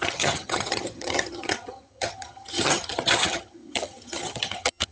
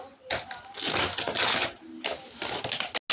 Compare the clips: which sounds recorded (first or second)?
second